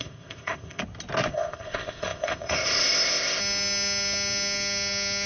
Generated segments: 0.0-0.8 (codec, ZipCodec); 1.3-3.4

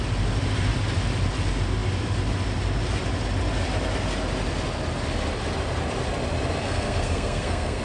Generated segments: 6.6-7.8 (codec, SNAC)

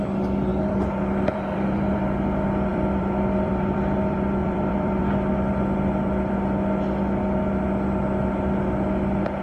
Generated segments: 0.5-2.0 (vocoder, BigVGAN v2); 2.7-5.0